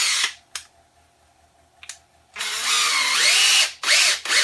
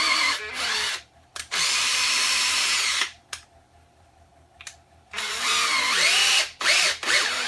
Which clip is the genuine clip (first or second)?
first